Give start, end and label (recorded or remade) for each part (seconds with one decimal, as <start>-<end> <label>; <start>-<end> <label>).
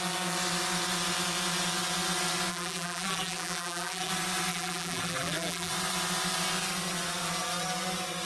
0.0-2.5 recorded; 2.5-4.1 remade; 4.1-4.5 recorded; 4.5-5.7 remade; 5.7-8.2 recorded